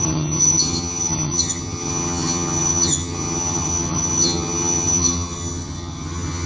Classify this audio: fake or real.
fake